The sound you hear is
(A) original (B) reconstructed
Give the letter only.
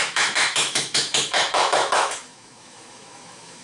B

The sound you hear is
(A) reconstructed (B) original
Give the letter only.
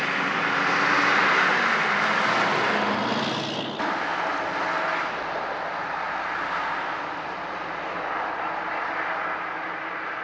B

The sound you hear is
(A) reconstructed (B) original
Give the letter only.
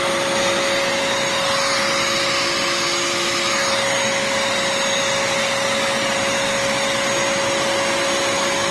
B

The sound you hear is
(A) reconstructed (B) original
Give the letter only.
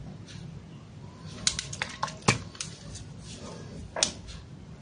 B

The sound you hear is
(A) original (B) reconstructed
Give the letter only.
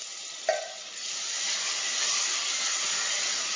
A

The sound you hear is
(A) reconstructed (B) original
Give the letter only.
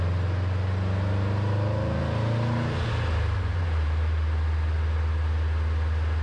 B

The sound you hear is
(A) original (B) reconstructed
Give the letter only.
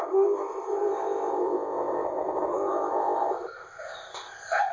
B